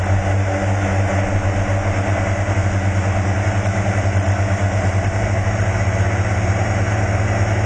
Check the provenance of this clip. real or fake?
real